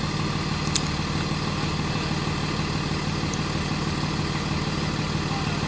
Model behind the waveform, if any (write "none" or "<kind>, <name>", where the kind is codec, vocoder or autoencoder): none